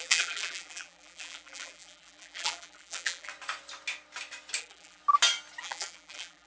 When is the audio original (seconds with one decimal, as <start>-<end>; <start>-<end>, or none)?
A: 3.3-4.6; 5.0-5.6